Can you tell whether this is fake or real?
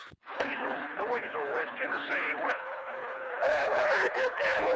fake